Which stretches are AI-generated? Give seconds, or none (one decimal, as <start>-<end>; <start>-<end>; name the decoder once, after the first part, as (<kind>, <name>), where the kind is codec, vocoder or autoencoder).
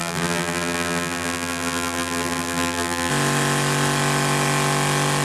0.0-3.1 (vocoder, BigVGAN v2)